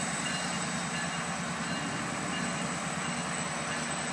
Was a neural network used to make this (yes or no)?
no